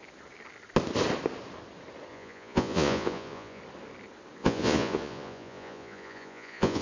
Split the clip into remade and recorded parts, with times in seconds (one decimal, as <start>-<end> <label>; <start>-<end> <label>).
0.0-2.1 recorded; 2.1-3.6 remade; 3.6-4.4 recorded; 4.4-6.8 remade